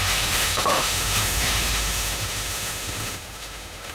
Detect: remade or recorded remade